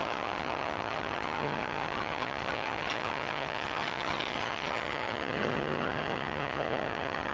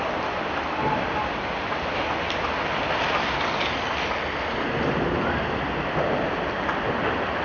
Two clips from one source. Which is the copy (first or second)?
first